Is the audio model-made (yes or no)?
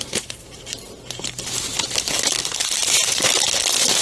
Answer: yes